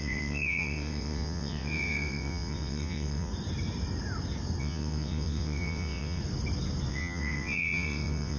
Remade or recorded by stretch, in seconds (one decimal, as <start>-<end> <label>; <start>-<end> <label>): 0.0-3.3 remade; 3.3-4.6 recorded; 4.6-6.2 remade; 6.2-6.9 recorded; 6.9-8.4 remade